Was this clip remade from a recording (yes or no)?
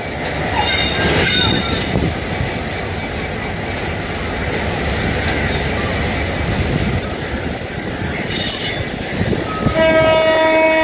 no